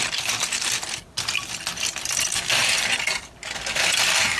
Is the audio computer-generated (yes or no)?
no